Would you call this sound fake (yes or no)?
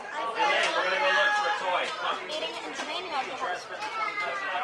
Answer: yes